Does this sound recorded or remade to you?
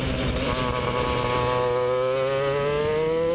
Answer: recorded